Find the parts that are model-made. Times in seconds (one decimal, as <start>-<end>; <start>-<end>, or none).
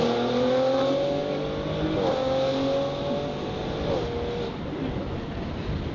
none